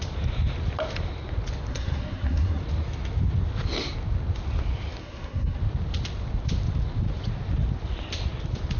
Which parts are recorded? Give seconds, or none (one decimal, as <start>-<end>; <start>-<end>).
0.0-1.7; 2.6-5.0; 5.6-8.8